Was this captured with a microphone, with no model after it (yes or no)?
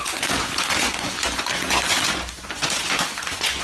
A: no